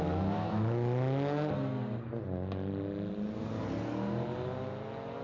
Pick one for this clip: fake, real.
real